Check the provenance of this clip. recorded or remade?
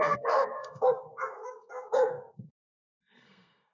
remade